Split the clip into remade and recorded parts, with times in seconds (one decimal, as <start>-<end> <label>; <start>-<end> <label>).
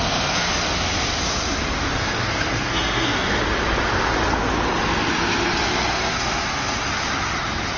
0.0-0.5 remade; 0.5-1.8 recorded; 1.8-3.4 remade; 3.4-5.9 recorded; 5.9-6.8 remade; 6.8-7.8 recorded